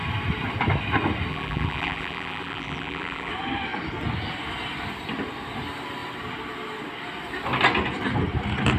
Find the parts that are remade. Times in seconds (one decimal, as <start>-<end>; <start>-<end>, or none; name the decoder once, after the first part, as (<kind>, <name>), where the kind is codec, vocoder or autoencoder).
1.3-3.3 (vocoder, BigVGAN v2)